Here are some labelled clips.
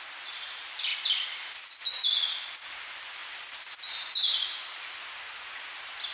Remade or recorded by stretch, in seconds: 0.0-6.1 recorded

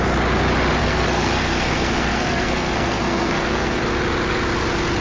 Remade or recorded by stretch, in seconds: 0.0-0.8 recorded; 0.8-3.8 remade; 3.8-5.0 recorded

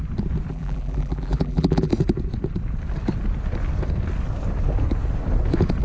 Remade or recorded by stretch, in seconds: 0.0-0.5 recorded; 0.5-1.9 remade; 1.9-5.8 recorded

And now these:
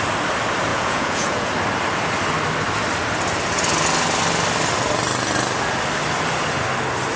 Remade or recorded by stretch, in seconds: 0.0-0.7 recorded; 0.7-1.5 remade; 1.5-7.2 recorded